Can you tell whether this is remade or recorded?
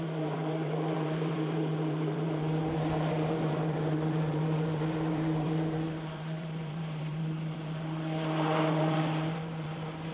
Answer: remade